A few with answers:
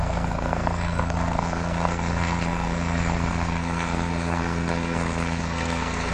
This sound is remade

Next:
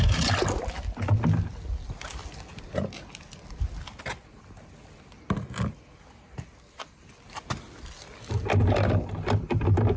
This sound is recorded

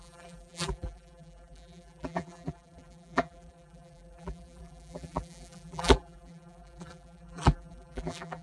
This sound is remade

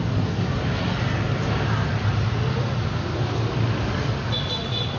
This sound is recorded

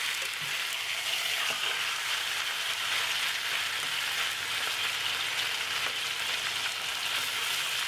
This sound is recorded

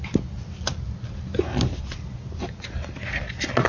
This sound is recorded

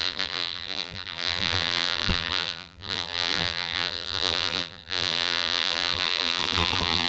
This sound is remade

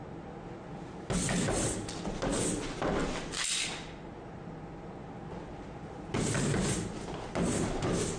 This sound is recorded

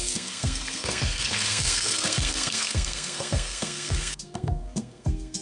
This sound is remade